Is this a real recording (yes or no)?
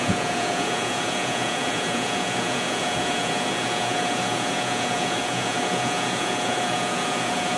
no